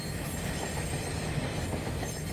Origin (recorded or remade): recorded